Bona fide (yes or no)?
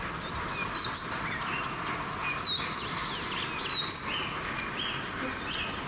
yes